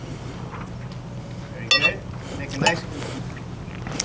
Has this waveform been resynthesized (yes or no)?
no